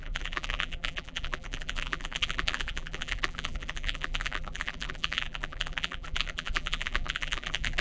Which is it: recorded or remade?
remade